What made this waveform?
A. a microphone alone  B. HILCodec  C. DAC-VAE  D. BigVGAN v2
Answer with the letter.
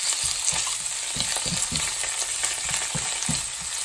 A